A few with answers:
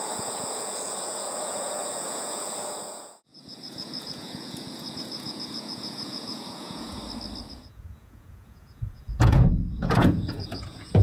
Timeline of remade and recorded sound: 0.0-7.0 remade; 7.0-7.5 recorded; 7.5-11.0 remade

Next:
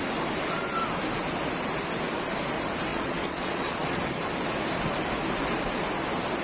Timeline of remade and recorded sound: 0.0-2.9 recorded; 2.9-4.0 remade; 4.0-6.4 recorded

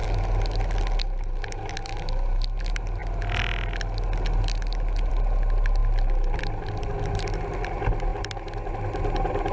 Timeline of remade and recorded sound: 0.0-9.5 recorded

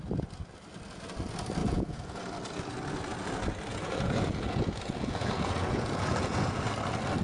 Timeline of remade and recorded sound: 0.0-1.6 recorded; 1.6-2.2 remade; 2.2-3.7 recorded; 3.7-6.6 remade; 6.6-7.2 recorded

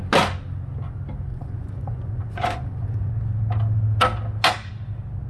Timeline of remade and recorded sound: 0.0-1.3 recorded; 1.3-3.1 remade; 3.1-5.3 recorded

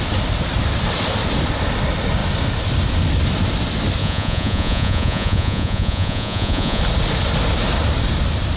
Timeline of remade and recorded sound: 0.0-4.0 recorded; 4.0-6.8 remade; 6.8-8.6 recorded